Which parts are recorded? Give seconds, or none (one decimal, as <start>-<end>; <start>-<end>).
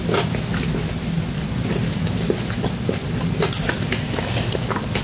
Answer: 0.0-5.0